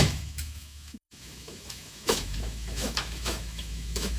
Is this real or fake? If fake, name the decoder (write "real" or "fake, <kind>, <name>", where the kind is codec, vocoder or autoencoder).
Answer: fake, autoencoder, DAC-VAE